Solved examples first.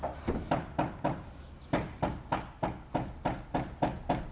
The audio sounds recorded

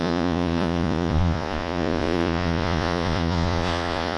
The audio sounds remade